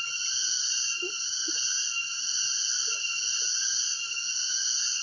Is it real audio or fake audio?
real